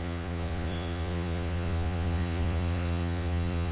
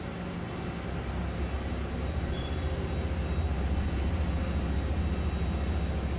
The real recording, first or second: second